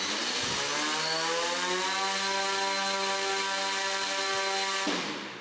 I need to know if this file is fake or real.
real